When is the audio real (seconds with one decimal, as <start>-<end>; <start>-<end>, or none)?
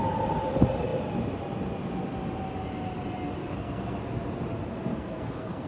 0.0-3.4; 4.0-4.9